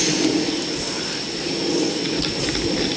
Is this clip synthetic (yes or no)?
no